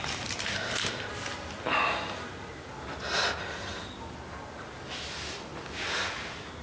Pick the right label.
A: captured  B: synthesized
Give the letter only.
A